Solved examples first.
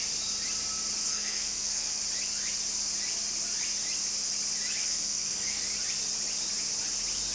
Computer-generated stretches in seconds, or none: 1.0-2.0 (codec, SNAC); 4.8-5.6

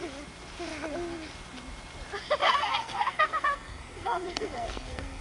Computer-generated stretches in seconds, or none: 2.4-5.2 (codec, SNAC)

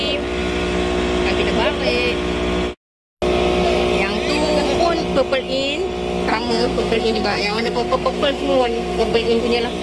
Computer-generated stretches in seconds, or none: 6.3-9.4 (codec, SNAC)

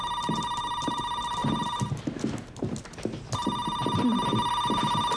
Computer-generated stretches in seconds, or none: none